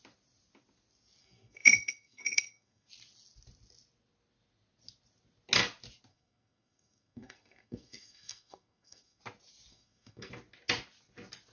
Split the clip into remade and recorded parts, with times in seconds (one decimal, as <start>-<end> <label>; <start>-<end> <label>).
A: 0.0-1.2 recorded; 1.2-2.9 remade; 2.9-6.1 recorded; 6.1-9.2 remade; 9.2-9.7 recorded; 9.7-10.3 remade; 10.3-11.5 recorded